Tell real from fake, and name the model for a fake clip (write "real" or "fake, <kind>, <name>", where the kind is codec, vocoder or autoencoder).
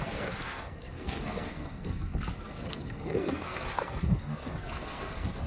fake, codec, SNAC